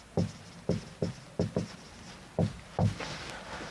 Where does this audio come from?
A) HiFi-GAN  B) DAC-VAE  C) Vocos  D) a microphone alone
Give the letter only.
D